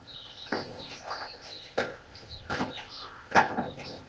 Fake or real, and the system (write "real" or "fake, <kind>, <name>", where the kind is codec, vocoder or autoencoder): fake, codec, ZipCodec